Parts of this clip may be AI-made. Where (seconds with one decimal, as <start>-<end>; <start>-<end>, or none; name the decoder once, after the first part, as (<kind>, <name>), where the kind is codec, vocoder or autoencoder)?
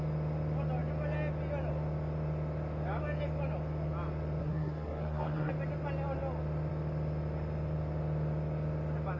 4.4-5.5 (codec, SNAC)